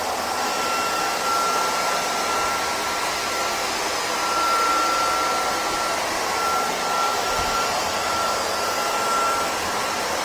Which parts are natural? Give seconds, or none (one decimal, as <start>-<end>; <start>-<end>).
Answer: 0.0-7.1; 7.8-10.2